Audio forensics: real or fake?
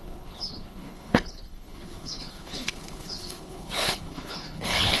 fake